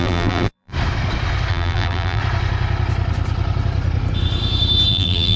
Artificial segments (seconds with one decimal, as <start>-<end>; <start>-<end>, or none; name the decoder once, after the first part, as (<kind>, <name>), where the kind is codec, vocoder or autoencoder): 0.0-0.7 (vocoder, BigVGAN v2); 1.5-2.2; 4.9-5.4

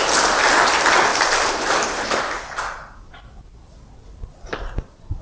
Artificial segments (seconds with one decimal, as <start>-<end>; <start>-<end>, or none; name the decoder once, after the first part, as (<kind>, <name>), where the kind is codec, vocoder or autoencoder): 1.1-2.6 (vocoder, BigVGAN v2)

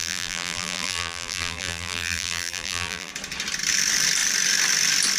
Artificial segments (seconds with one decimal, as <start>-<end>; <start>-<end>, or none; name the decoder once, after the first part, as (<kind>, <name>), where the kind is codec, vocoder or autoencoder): 0.0-3.1 (vocoder, BigVGAN v2)